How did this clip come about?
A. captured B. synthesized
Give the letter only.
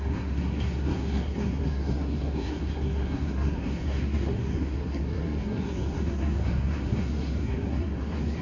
B